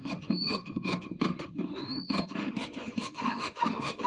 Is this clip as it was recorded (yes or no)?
no